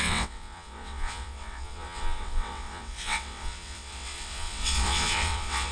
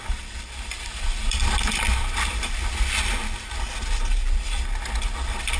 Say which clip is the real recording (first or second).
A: second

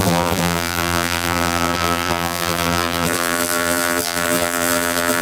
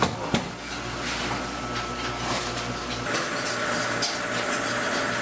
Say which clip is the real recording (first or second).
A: second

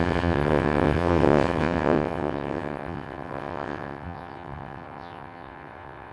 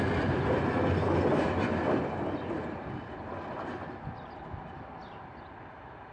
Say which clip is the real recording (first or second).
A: second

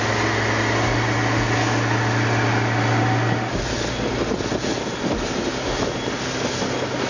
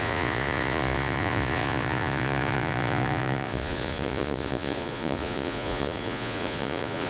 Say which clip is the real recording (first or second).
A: first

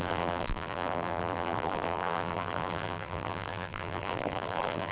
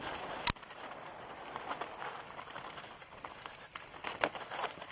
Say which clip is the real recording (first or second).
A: second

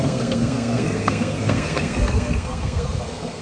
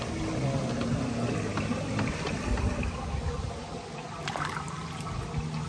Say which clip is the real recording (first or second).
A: second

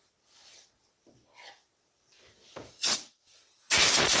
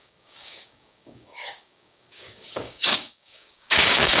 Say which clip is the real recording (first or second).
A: first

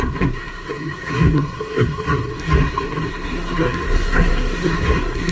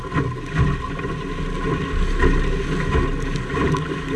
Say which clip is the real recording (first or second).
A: second